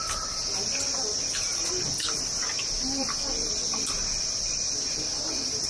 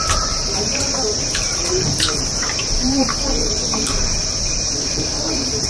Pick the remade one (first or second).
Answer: second